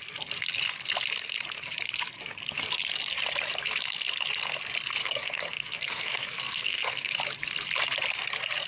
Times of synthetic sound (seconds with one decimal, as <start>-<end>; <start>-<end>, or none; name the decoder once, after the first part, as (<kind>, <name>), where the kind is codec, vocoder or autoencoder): 5.0-7.1 (codec, SNAC)